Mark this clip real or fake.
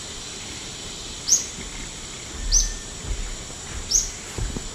fake